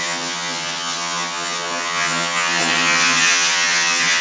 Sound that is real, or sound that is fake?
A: fake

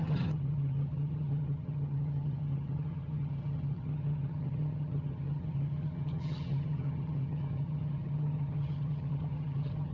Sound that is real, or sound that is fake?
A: fake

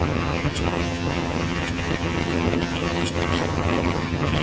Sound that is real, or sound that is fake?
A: fake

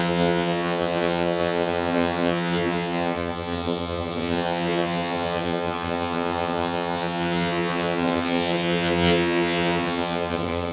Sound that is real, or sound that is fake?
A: fake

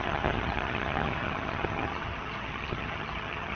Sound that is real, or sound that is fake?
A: fake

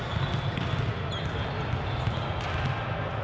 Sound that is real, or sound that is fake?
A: real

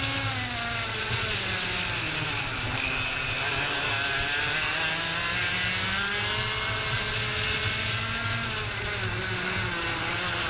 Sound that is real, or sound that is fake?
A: real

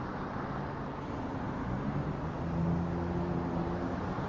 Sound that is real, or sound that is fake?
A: real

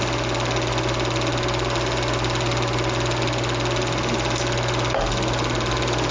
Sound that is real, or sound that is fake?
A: real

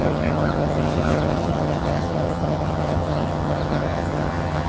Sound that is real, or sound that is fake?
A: fake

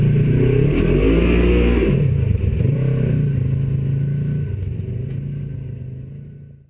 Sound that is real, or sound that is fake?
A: real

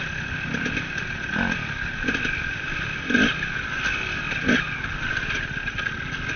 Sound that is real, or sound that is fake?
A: real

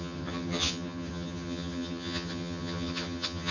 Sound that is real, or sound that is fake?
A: fake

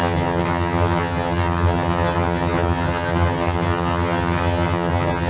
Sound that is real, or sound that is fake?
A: fake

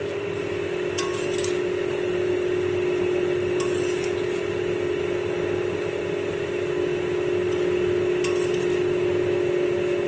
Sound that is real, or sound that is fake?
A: real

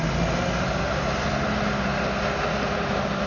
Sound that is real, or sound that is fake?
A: real